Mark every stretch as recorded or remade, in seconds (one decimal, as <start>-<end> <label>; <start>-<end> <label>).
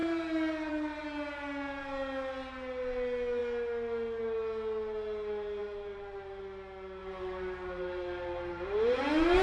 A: 0.0-0.7 remade; 0.7-5.6 recorded; 5.6-6.4 remade; 6.4-7.0 recorded; 7.0-9.0 remade; 9.0-9.4 recorded